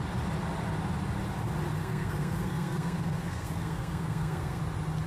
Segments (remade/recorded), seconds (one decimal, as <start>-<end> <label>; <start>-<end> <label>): 0.0-1.8 recorded; 1.8-4.6 remade; 4.6-5.1 recorded